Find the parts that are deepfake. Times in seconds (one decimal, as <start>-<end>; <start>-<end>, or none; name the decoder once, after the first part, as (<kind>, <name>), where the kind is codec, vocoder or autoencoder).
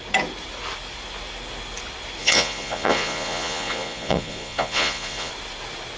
2.2-5.3 (vocoder, Vocos)